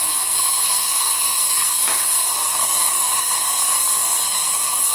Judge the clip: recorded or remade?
remade